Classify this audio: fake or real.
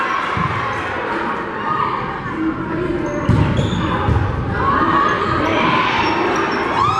real